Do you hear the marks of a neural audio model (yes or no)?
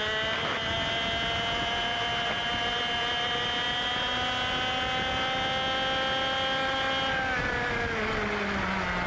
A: no